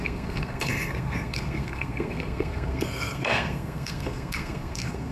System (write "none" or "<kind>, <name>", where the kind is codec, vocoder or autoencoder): codec, SNAC